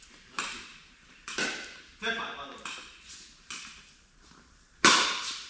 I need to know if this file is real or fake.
fake